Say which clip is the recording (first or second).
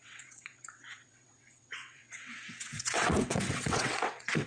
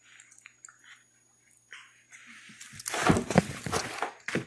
second